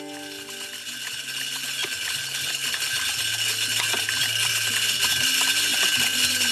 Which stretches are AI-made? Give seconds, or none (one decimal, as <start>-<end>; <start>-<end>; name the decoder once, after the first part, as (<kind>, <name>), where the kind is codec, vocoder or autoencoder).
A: none